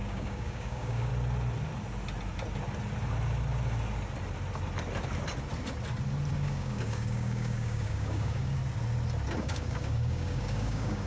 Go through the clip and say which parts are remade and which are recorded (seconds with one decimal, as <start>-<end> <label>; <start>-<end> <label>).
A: 0.0-1.1 remade; 1.1-6.3 recorded; 6.3-8.6 remade; 8.6-9.4 recorded; 9.4-11.1 remade